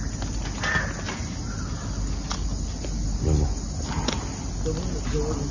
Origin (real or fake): real